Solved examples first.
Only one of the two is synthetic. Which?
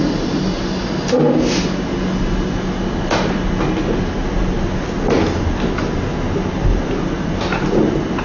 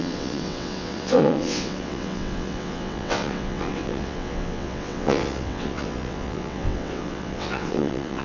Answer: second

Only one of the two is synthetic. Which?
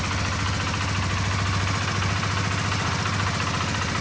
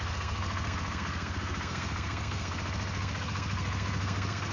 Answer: second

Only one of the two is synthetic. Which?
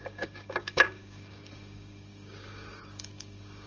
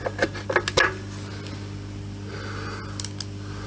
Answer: first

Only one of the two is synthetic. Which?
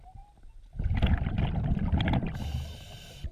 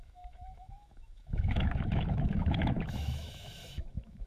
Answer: second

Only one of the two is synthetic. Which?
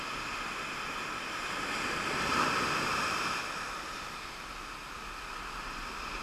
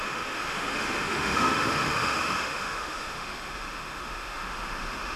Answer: second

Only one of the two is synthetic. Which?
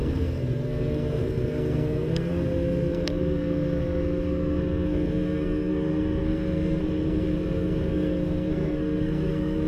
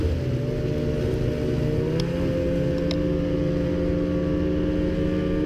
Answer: first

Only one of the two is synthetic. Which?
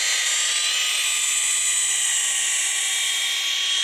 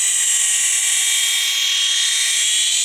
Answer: first